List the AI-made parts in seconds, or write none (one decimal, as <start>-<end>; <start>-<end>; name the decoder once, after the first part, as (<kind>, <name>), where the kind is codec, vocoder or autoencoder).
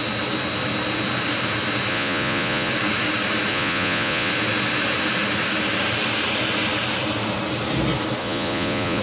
1.9-2.7 (vocoder, Vocos); 3.5-4.3; 8.2-9.0